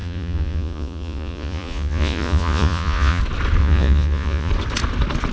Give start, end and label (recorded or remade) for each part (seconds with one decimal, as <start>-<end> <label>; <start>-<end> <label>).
0.0-3.2 remade; 3.2-3.6 recorded; 3.6-4.5 remade; 4.5-5.3 recorded